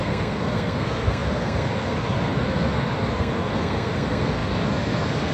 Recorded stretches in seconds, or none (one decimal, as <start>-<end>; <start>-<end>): none